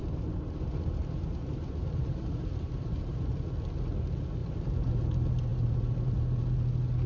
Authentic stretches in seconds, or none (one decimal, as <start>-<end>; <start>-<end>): 3.3-4.4; 5.0-5.5; 6.6-7.1